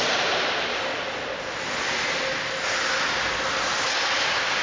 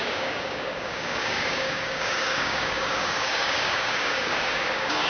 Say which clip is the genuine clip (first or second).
first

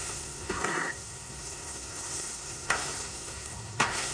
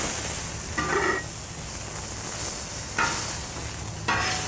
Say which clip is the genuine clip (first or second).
second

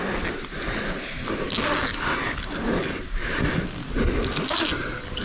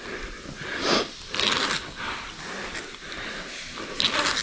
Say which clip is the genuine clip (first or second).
first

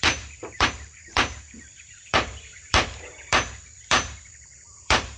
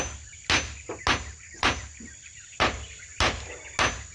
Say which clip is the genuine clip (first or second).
second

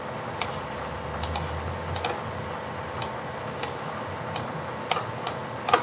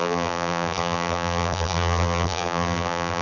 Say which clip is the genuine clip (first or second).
first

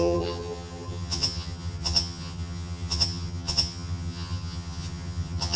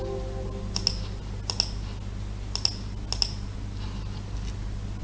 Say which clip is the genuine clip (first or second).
second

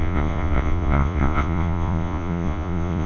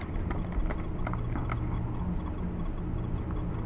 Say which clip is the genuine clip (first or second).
second